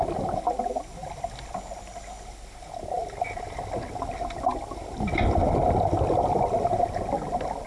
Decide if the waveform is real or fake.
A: real